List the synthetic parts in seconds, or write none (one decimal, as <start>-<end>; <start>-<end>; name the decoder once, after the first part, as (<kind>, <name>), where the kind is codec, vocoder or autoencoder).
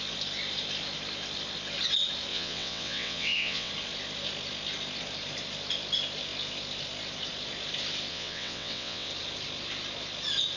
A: 2.3-3.7 (vocoder, WaveNeXt); 8.1-9.1